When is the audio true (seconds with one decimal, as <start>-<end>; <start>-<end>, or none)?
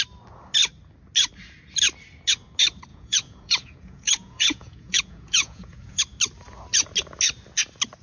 0.0-2.9; 6.0-8.0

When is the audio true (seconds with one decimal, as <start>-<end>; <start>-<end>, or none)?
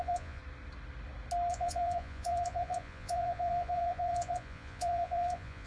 0.4-1.5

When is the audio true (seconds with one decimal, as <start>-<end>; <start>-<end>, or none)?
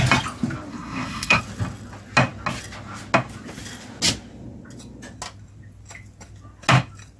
0.0-0.7; 1.4-7.2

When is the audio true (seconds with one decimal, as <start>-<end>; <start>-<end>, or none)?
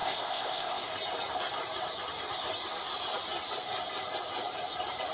0.9-5.1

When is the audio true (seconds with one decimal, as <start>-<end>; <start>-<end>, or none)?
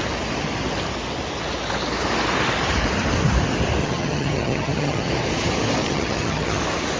0.0-3.8; 5.1-5.8; 6.6-7.0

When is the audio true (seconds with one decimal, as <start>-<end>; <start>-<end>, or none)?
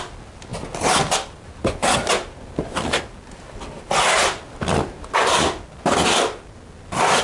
0.0-7.2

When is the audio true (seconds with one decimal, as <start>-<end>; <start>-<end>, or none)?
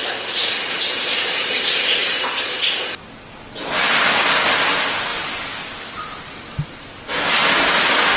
0.0-8.2